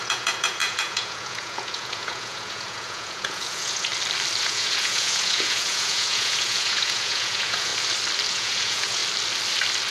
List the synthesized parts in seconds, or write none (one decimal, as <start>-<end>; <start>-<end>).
0.0-3.9; 4.4-7.7; 8.3-9.0